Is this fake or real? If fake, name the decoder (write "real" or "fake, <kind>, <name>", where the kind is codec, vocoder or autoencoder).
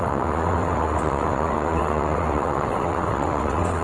fake, vocoder, WaveNeXt